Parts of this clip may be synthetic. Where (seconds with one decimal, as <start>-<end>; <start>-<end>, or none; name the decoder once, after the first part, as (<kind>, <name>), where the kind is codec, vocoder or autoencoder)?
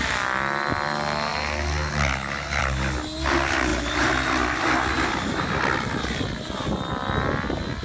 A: none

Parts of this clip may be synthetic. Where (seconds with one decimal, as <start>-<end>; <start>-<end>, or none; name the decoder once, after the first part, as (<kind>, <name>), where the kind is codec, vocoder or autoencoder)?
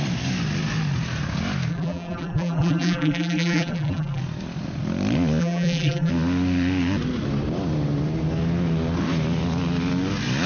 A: 1.7-4.2 (vocoder, BigVGAN v2); 5.4-6.1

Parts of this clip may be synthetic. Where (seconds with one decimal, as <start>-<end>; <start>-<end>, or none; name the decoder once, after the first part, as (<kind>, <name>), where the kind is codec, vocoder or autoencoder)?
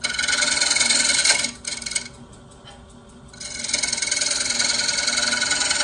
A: none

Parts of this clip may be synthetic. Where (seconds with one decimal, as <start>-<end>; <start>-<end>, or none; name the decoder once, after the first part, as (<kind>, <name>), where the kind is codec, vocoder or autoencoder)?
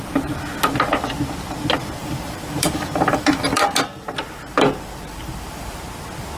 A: 2.0-5.8 (vocoder, BigVGAN v2)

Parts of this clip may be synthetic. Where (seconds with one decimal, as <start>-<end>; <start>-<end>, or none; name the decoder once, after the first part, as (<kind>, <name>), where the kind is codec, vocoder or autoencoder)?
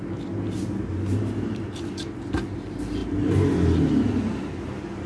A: 0.9-1.6 (vocoder, BigVGAN v2)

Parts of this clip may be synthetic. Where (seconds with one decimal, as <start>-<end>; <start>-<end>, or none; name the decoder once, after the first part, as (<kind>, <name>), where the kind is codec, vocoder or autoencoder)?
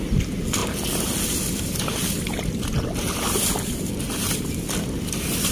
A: none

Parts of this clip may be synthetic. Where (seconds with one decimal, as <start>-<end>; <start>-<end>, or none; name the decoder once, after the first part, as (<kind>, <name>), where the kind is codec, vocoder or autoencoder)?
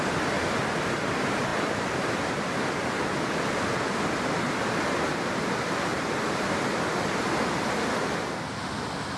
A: 1.5-4.8 (vocoder, BigVGAN v2); 5.9-8.1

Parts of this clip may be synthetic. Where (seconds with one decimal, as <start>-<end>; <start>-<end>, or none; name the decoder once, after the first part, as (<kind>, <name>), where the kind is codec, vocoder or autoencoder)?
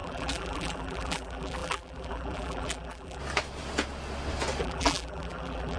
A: 0.0-3.2 (vocoder, BigVGAN v2); 4.6-5.8